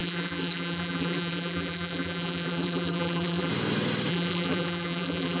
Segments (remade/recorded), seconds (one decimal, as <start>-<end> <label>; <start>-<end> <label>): 0.0-3.5 remade; 3.5-4.1 recorded; 4.1-5.4 remade